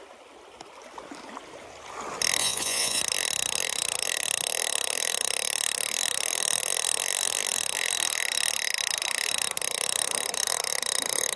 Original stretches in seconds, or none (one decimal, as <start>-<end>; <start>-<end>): 0.0-2.4; 3.0-11.4